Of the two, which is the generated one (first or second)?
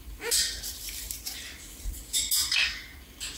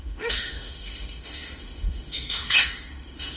second